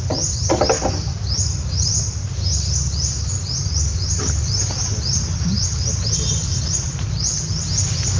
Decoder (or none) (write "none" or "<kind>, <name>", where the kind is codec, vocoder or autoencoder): none